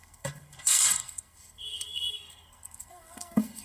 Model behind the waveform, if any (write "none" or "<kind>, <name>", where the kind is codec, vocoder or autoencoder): codec, SNAC